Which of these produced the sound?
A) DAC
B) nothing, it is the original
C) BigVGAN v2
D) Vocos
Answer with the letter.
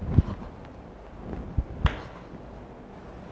B